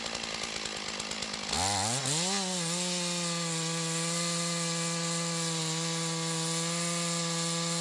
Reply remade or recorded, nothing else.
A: recorded